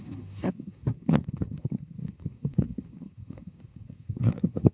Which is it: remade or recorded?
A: remade